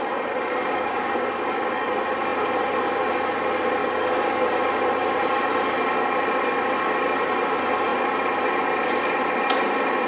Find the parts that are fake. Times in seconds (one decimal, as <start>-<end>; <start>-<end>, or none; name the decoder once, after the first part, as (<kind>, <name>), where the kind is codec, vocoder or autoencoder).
0.6-1.9 (codec, DAC); 3.8-4.4

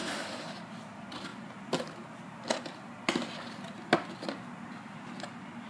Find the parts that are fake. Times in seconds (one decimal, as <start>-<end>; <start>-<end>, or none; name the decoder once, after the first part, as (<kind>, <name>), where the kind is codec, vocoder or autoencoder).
none

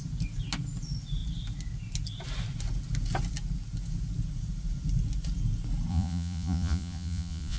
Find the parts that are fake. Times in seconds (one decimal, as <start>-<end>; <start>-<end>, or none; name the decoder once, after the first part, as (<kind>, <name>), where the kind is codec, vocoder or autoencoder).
5.9-7.6 (vocoder, Vocos)

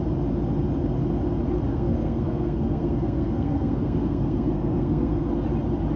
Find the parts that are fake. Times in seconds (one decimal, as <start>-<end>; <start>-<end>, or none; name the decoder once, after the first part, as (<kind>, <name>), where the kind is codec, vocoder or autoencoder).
1.7-5.3 (codec, SNAC)

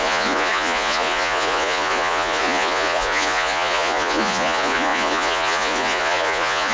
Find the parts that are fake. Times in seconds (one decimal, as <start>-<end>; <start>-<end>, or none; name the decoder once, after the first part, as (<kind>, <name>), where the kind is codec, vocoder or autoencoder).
0.0-6.7 (vocoder, Vocos)

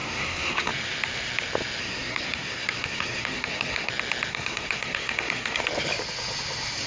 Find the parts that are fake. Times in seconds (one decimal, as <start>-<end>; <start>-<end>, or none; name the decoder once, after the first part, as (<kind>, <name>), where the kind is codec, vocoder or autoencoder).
0.0-0.7 (codec, SNAC); 1.8-3.9; 4.3-5.6